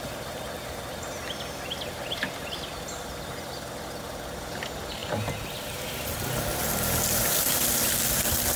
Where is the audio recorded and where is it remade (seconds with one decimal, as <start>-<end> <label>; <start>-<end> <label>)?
0.0-8.6 recorded